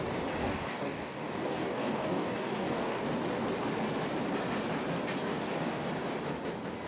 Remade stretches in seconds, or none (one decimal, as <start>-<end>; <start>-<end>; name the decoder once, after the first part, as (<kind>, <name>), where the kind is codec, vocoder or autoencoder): 0.4-3.0 (codec, DAC); 5.3-5.9